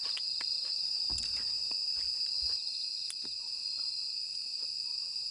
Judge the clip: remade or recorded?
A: recorded